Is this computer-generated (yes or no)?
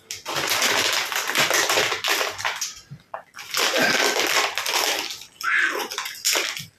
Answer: no